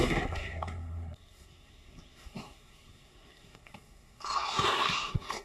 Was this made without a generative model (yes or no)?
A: no